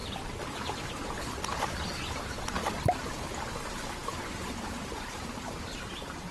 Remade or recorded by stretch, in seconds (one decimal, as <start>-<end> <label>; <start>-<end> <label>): 0.0-6.3 recorded